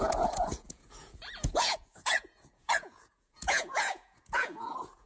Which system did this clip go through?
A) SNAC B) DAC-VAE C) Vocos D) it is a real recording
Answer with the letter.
C